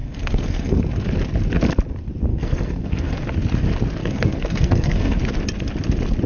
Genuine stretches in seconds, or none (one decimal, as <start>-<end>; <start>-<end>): 0.8-2.3; 3.2-4.0; 5.2-6.3